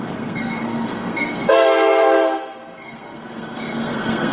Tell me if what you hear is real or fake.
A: fake